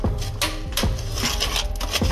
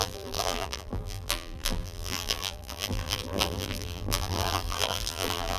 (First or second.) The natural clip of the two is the first